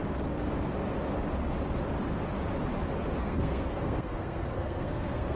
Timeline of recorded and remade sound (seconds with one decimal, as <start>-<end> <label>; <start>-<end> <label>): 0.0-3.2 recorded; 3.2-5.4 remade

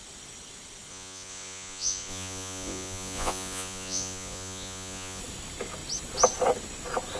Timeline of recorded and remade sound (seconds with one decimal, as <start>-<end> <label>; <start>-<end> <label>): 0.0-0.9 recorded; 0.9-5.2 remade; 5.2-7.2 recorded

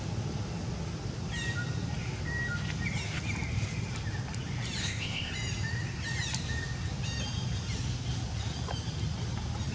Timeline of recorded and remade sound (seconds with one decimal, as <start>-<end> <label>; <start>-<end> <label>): 0.0-4.8 recorded; 4.8-5.3 remade; 5.3-9.7 recorded

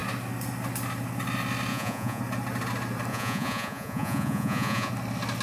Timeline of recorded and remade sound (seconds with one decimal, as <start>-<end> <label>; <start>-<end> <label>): 0.0-1.7 recorded; 1.7-2.2 remade; 2.2-3.1 recorded; 3.1-4.9 remade; 4.9-5.4 recorded

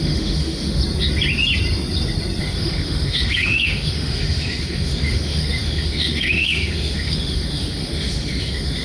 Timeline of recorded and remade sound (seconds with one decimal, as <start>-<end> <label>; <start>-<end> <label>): 0.0-0.8 remade; 0.8-2.4 recorded; 2.4-8.8 remade

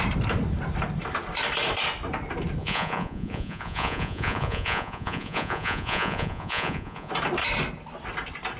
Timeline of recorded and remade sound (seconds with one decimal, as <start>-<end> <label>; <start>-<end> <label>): 0.0-2.6 recorded; 2.6-7.1 remade; 7.1-8.6 recorded

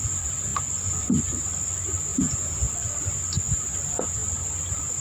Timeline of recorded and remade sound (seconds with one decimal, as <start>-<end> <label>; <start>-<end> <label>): 0.0-2.1 recorded; 2.1-2.7 remade; 2.7-5.0 recorded